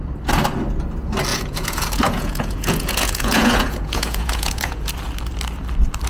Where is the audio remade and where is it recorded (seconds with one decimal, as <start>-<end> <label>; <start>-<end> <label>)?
0.0-1.3 recorded; 1.3-4.9 remade; 4.9-6.1 recorded